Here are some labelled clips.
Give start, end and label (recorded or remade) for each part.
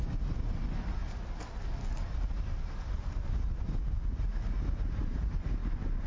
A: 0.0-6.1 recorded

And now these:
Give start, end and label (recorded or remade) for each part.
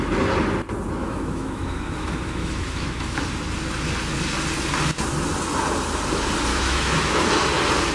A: 0.0-1.0 recorded; 1.0-3.3 remade; 3.3-6.5 recorded; 6.5-7.2 remade; 7.2-7.9 recorded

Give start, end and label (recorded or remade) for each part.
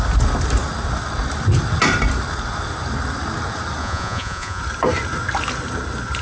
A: 0.0-3.8 recorded; 3.8-4.6 remade; 4.6-6.2 recorded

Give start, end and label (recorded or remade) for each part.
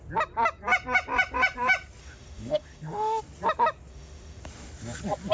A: 0.0-2.0 recorded; 2.0-3.2 remade; 3.2-3.9 recorded; 3.9-4.4 remade; 4.4-5.3 recorded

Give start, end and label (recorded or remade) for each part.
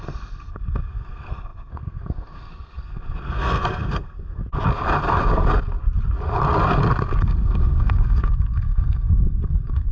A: 0.0-4.4 remade; 4.4-7.2 recorded; 7.2-9.9 remade